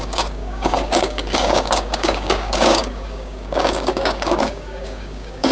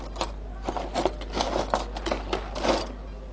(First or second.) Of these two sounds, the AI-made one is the first